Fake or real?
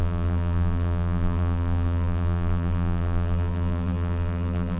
fake